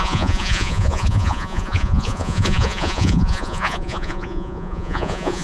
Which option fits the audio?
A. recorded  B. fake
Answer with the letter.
B